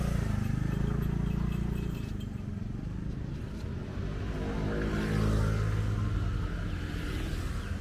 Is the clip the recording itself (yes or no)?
yes